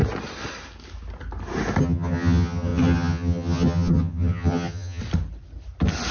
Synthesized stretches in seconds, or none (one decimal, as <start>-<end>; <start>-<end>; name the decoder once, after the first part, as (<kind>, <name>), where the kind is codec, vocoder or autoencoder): 1.8-5.0 (vocoder, HiFi-GAN)